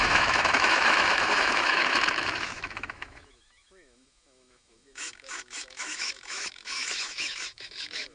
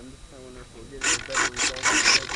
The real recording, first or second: second